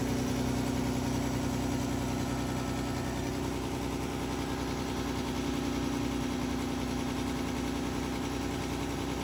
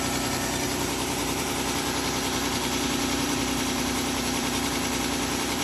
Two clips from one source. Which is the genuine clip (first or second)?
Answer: first